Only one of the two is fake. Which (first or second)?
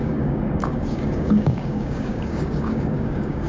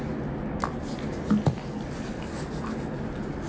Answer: first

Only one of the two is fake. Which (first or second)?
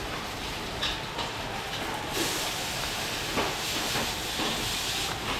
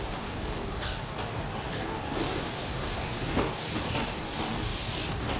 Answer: second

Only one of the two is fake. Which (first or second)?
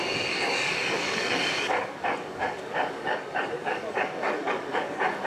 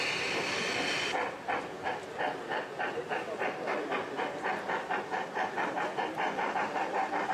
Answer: first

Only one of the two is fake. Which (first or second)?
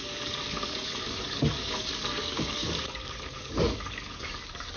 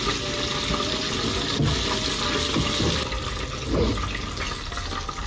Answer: first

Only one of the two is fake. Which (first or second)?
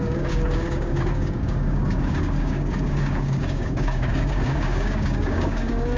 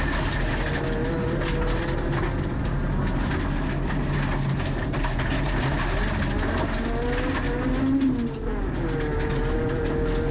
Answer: first